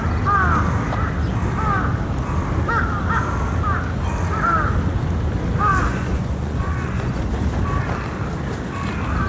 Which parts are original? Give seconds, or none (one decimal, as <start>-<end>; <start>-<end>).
0.0-5.9; 7.2-9.3